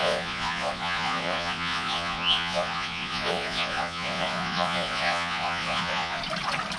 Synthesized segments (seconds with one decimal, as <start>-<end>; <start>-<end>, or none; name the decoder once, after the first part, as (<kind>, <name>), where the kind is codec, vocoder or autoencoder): 0.0-6.2 (vocoder, Vocos)